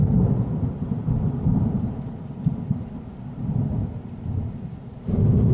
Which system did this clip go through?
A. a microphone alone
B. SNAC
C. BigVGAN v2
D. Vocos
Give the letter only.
A